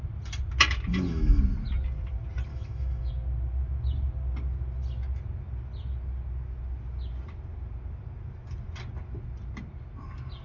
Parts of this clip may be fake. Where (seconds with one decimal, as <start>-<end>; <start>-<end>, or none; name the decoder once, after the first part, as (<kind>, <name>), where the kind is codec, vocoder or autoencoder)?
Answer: 0.9-1.4 (autoencoder, DAC-VAE); 2.5-3.1